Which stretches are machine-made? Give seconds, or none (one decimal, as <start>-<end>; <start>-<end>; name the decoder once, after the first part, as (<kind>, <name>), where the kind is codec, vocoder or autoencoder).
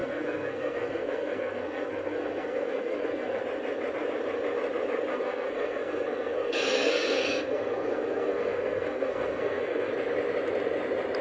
0.0-3.4 (codec, SNAC); 5.1-9.9